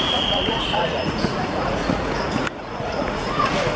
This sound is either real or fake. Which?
fake